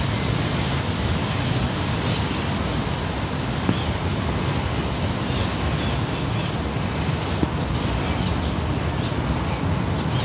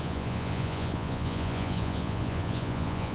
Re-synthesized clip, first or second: second